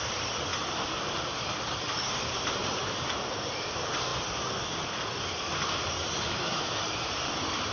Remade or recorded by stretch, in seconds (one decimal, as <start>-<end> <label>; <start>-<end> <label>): 0.0-0.5 remade; 0.5-1.4 recorded; 1.4-4.1 remade; 4.1-5.2 recorded; 5.2-7.7 remade